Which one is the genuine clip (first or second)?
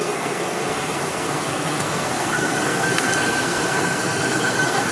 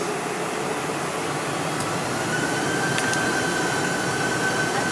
second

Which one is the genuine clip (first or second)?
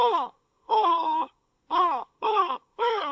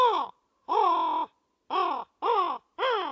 second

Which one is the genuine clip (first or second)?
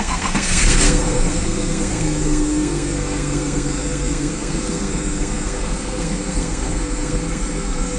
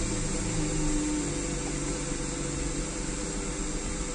second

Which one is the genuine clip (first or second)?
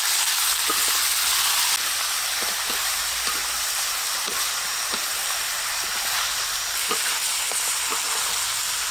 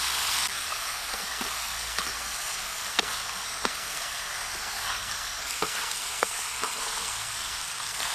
first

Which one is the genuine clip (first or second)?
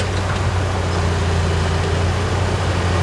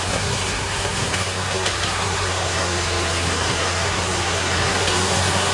first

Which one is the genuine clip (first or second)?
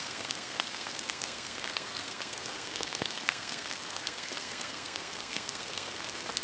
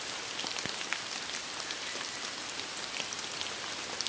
second